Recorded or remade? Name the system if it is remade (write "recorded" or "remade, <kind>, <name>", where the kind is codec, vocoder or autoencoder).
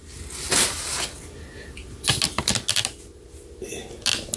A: recorded